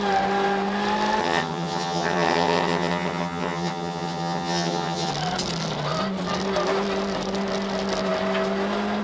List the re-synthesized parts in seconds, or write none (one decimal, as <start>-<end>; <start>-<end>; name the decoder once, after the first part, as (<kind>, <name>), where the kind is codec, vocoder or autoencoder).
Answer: 1.2-5.1 (vocoder, HiFi-GAN)

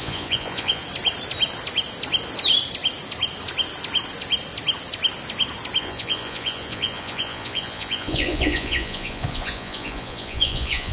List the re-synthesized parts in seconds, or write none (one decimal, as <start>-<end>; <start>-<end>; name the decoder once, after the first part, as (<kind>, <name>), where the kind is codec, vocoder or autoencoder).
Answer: 0.0-0.8 (vocoder, Vocos); 5.8-10.9

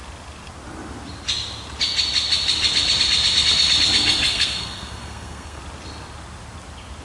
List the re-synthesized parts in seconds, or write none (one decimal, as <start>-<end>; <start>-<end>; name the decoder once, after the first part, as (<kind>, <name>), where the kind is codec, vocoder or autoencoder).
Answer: 4.3-5.6 (codec, SNAC)

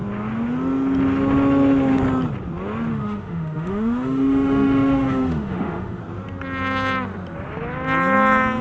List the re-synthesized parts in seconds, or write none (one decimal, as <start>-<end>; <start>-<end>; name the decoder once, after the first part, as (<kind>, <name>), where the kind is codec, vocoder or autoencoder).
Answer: 2.9-6.0 (autoencoder, DAC-VAE)

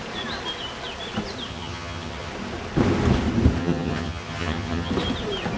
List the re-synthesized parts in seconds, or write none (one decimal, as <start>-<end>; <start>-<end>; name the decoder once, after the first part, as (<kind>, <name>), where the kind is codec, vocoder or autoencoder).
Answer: 1.5-2.3 (vocoder, HiFi-GAN); 3.6-4.9

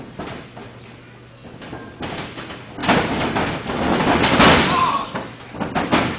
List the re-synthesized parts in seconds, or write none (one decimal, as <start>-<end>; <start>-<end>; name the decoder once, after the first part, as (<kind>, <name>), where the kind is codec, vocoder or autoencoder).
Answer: none

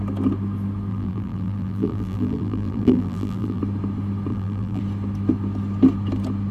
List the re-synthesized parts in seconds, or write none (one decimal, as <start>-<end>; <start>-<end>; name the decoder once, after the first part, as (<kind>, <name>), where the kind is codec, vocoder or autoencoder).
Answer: 0.9-3.6 (vocoder, BigVGAN v2); 4.3-4.8

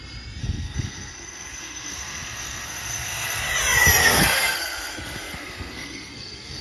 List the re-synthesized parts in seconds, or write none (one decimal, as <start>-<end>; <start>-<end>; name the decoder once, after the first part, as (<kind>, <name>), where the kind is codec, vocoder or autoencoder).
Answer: 0.4-3.4 (codec, SNAC); 4.0-6.6